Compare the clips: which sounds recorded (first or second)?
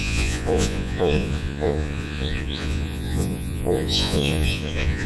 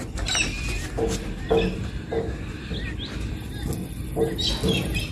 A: second